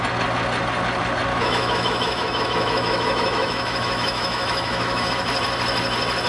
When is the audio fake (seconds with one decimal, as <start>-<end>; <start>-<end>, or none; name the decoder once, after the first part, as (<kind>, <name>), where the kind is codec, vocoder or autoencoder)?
1.3-5.1 (autoencoder, DAC-VAE)